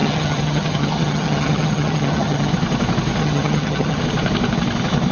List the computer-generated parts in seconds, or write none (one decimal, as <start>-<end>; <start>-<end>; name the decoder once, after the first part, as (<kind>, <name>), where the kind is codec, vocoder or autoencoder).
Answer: 0.0-2.5 (vocoder, HiFi-GAN); 3.2-4.0